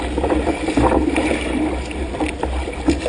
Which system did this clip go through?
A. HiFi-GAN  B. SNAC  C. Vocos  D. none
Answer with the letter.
D